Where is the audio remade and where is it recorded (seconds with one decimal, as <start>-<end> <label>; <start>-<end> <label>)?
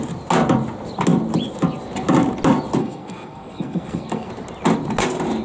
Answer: 0.0-2.8 recorded; 2.8-4.3 remade; 4.3-5.4 recorded